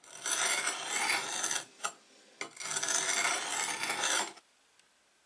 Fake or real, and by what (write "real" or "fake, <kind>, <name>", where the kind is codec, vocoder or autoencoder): real